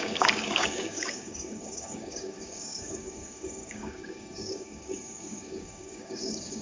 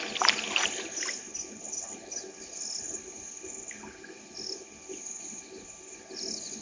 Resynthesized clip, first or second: first